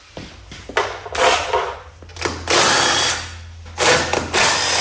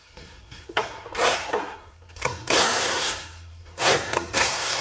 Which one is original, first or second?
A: first